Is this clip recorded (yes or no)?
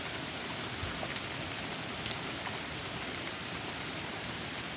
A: yes